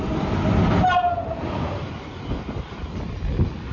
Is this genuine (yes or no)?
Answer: yes